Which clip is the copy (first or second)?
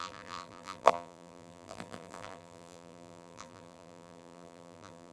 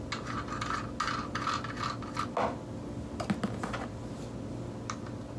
first